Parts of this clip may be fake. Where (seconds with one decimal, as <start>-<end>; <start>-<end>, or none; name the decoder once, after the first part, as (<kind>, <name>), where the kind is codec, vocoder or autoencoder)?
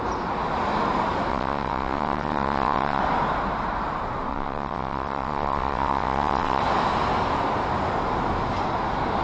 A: 1.3-3.0 (vocoder, WaveNeXt); 4.3-6.6